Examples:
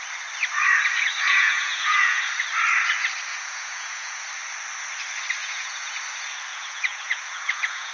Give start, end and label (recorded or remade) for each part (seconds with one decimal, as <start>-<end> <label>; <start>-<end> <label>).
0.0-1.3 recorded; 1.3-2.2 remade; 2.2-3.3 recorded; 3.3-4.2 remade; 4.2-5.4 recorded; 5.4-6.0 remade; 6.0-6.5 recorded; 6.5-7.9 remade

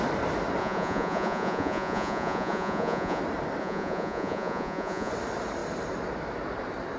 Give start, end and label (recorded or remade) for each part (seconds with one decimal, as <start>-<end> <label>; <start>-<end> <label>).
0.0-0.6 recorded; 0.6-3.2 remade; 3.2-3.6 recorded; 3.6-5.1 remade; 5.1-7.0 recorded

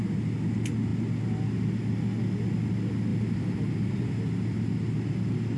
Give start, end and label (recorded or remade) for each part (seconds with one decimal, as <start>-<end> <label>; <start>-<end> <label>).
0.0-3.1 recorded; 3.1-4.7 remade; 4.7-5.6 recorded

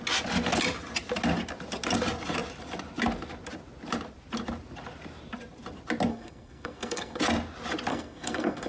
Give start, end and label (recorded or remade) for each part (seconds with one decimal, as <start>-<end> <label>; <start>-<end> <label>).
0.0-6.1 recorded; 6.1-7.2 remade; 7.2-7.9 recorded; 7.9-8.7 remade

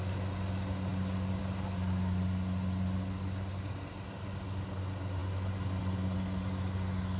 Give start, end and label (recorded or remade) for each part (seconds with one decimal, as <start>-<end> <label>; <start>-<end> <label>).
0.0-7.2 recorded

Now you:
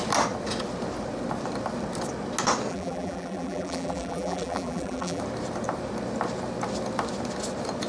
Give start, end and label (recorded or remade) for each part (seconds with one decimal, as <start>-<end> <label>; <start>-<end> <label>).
0.0-2.7 recorded; 2.7-5.2 remade; 5.2-7.9 recorded